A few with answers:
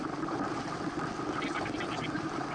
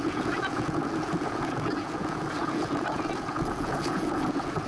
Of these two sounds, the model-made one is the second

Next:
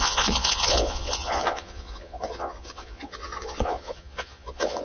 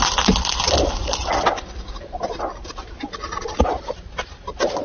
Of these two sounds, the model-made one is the first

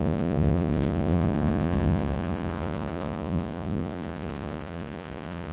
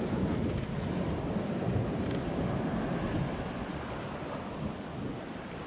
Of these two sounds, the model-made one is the first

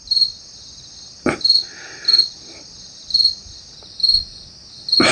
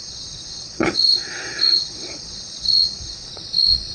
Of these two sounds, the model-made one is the second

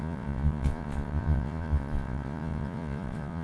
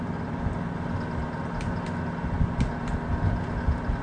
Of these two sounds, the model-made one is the first